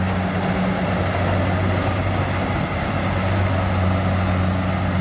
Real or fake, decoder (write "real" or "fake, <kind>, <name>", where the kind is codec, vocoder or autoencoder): real